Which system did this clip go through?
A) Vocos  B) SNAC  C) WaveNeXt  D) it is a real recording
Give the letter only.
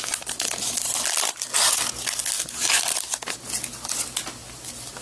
D